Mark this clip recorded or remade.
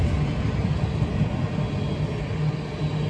recorded